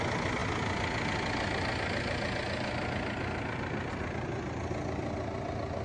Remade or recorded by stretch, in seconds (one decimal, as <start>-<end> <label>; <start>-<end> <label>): 0.0-5.8 recorded